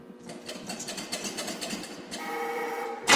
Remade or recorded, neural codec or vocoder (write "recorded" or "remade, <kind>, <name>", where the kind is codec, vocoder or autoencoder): remade, vocoder, BigVGAN v2